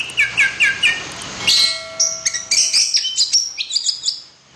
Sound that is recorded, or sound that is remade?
recorded